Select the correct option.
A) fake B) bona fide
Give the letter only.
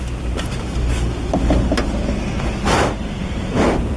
B